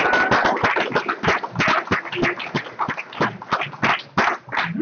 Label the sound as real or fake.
real